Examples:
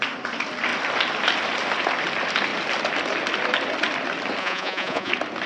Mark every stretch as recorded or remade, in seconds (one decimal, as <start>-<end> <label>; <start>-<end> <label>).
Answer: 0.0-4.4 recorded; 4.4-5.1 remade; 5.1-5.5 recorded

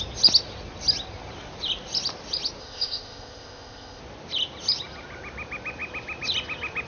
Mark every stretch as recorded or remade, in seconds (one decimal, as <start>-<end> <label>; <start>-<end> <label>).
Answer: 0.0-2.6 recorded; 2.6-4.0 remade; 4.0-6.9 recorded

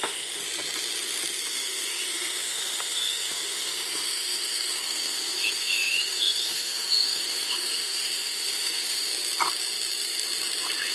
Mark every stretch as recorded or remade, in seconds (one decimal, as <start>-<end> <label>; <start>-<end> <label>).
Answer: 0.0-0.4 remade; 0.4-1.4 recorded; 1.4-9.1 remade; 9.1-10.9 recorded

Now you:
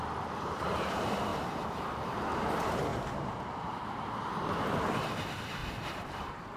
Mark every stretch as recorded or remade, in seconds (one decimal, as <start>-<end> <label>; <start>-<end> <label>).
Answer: 0.0-1.3 recorded; 1.3-2.2 remade; 2.2-2.9 recorded; 2.9-4.3 remade; 4.3-5.6 recorded; 5.6-6.6 remade

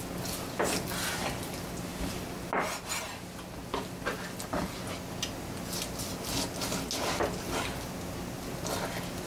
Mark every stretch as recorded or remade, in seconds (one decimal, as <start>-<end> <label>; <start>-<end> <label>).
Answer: 0.0-9.3 recorded